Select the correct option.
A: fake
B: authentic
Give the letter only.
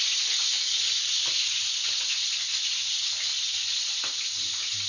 B